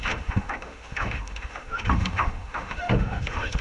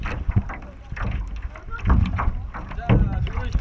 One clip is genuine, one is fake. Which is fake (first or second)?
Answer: first